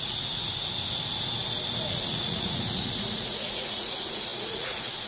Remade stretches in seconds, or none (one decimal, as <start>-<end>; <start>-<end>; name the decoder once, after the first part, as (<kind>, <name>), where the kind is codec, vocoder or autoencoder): 0.0-0.5 (vocoder, Vocos); 1.9-5.1